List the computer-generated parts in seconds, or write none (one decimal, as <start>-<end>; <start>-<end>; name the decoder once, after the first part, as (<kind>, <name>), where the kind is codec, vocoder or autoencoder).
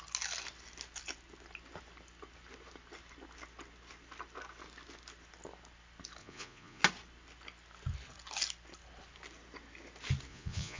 6.2-6.8 (vocoder, Vocos); 10.3-10.8